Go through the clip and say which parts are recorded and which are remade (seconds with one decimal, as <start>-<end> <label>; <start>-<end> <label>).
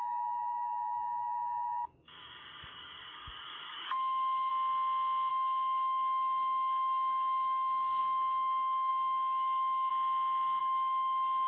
0.0-4.5 remade; 4.5-5.3 recorded; 5.3-9.9 remade; 9.9-10.6 recorded; 10.6-11.5 remade